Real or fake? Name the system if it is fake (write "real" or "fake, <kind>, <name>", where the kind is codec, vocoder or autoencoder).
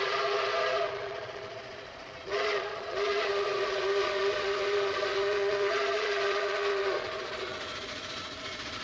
fake, vocoder, Vocos